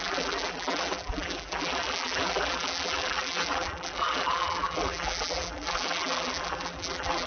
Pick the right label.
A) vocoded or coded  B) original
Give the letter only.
A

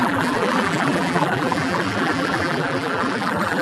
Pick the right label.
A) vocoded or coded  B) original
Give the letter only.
A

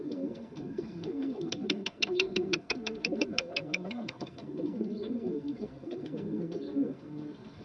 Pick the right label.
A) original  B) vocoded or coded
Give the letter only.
B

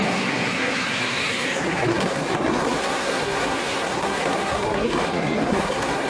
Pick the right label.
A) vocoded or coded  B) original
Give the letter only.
A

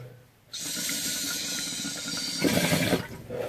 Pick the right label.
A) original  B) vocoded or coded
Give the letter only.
A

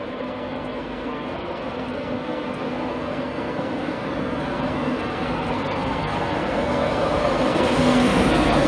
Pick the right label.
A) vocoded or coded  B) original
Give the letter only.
A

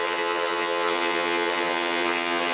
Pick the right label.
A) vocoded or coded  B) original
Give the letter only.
A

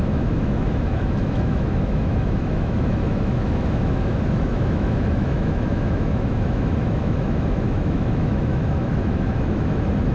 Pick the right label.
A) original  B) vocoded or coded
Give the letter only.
B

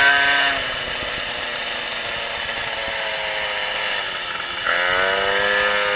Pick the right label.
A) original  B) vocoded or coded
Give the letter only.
A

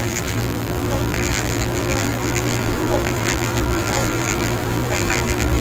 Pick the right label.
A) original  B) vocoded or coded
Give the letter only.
B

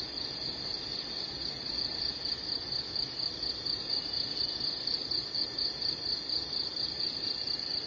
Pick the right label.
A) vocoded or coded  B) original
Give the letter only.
B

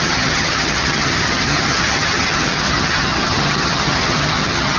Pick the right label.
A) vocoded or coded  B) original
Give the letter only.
A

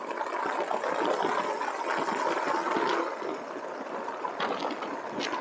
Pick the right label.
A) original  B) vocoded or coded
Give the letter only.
A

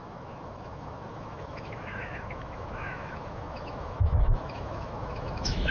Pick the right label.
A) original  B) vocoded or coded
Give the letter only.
B